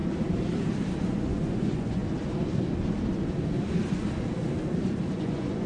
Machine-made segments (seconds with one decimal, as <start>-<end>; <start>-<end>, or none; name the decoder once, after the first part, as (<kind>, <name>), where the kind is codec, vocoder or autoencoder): 1.0-2.0 (vocoder, Vocos); 5.1-5.7